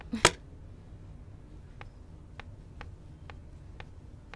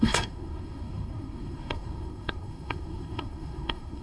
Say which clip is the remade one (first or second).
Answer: second